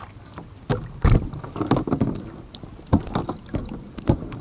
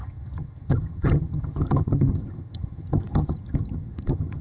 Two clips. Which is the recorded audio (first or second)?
first